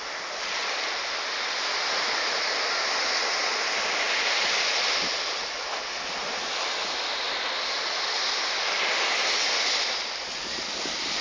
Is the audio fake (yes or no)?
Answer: no